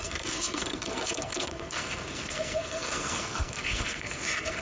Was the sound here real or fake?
fake